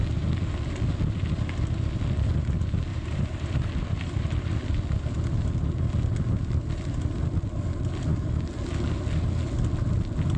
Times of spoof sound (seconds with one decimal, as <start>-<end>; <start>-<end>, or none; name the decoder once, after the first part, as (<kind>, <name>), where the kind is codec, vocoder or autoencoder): 2.9-3.5 (vocoder, BigVGAN v2)